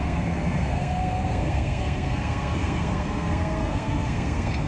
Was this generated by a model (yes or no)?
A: yes